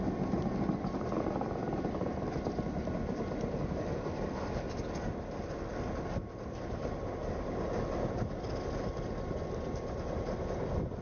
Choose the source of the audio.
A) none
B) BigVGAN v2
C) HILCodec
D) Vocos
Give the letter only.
A